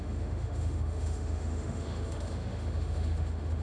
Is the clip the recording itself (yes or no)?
no